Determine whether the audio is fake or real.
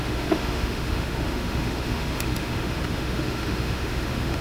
fake